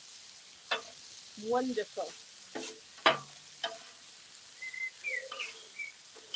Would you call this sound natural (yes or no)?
yes